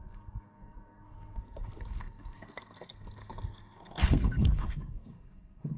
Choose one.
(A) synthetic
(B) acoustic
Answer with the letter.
A